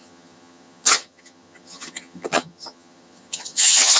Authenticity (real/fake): fake